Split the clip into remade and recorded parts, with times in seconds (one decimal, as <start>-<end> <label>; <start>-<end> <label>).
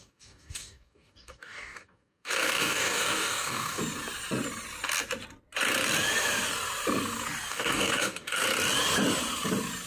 0.0-3.8 remade; 3.8-7.5 recorded; 7.5-8.4 remade; 8.4-9.9 recorded